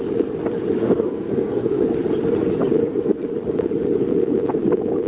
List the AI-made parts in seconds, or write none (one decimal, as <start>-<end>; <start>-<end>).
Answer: 0.8-1.8; 2.8-3.3